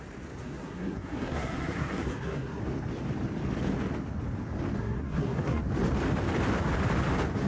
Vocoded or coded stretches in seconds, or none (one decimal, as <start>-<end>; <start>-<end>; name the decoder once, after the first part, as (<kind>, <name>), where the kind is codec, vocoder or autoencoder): 0.4-2.6 (codec, SNAC); 4.8-5.6